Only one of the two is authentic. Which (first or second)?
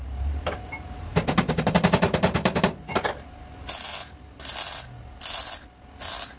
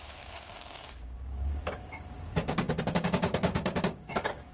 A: first